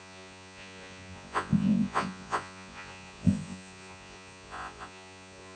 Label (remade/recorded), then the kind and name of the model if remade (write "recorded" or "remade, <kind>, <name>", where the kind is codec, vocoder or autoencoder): remade, vocoder, Vocos